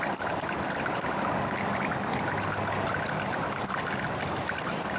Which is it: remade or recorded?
recorded